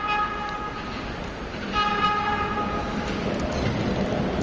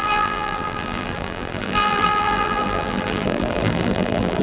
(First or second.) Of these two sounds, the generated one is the second